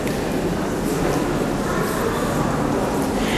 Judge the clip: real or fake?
real